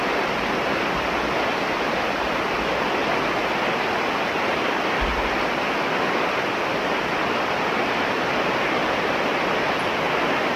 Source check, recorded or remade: recorded